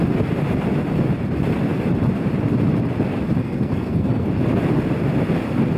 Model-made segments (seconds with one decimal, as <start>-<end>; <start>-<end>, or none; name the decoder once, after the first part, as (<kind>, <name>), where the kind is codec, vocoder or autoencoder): 3.4-4.3 (codec, SNAC)